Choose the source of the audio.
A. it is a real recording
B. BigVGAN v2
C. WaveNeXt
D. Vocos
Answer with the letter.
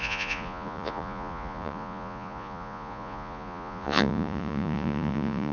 D